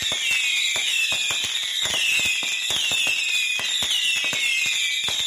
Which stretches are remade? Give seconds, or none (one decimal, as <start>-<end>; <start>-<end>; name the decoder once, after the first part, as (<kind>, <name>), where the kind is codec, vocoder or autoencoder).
0.5-1.1 (autoencoder, DAC-VAE)